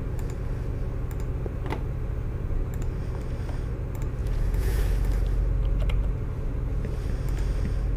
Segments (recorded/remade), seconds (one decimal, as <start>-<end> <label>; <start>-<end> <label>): 0.0-4.2 recorded; 4.2-4.8 remade; 4.8-8.0 recorded